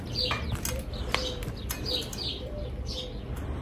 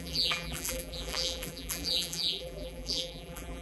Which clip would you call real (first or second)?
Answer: first